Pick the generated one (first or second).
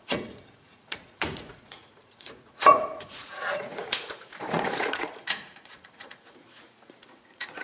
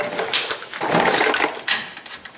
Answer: first